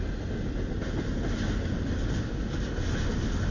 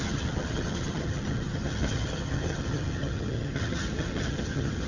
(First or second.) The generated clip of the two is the second